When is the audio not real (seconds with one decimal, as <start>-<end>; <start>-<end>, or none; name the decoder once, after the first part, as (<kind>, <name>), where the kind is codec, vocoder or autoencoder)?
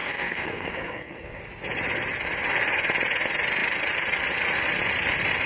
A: 0.0-1.4 (codec, SNAC)